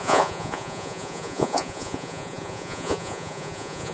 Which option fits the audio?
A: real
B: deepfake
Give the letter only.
B